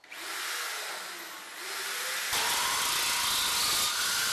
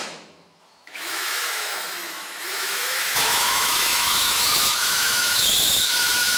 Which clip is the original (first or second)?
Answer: first